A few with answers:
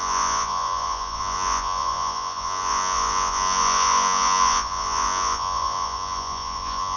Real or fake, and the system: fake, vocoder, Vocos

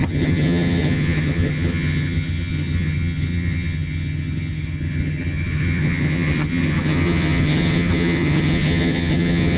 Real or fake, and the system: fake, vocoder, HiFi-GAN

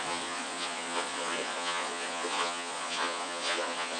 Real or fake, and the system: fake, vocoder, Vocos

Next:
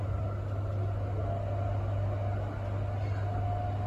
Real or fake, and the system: real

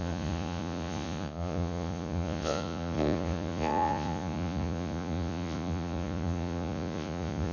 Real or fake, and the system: fake, vocoder, Vocos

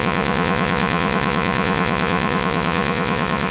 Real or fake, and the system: fake, vocoder, Vocos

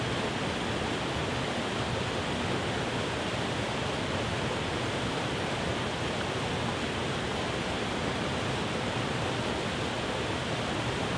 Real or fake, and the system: real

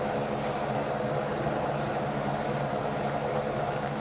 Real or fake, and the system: real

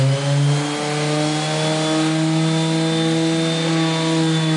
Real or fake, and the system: real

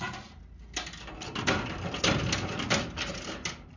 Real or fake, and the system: real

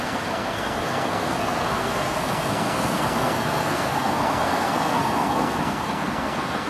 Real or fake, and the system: fake, codec, SNAC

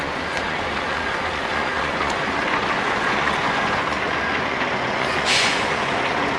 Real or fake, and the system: fake, vocoder, Vocos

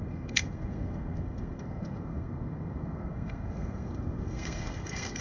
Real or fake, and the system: fake, codec, SNAC